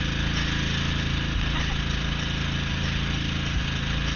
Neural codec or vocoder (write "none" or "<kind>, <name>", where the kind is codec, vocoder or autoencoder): none